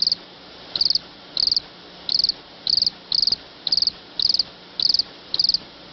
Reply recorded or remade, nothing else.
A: recorded